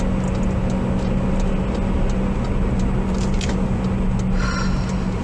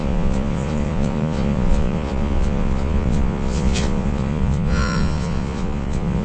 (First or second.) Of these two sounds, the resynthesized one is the second